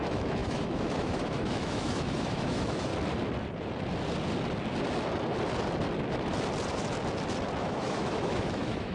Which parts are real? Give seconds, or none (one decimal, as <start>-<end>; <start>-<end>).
2.9-7.6